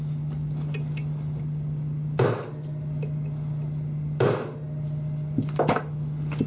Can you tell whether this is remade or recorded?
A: recorded